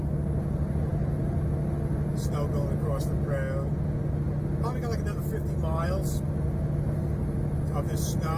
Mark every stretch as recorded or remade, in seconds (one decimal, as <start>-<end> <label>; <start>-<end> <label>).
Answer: 0.0-8.4 recorded